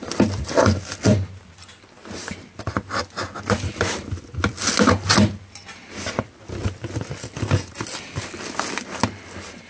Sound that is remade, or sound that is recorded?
recorded